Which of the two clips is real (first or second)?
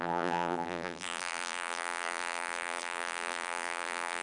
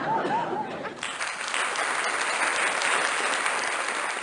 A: second